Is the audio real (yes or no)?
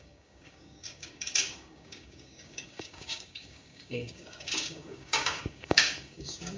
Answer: no